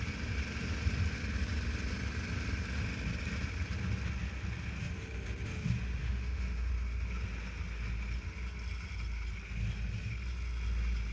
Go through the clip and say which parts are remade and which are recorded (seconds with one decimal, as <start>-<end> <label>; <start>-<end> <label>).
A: 0.0-6.0 recorded; 6.0-6.7 remade; 6.7-11.1 recorded